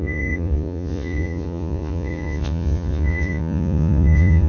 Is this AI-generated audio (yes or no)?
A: yes